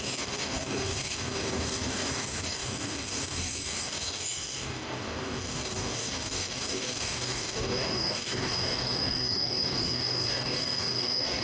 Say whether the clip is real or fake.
fake